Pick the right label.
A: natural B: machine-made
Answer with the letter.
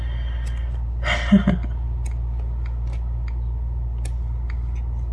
A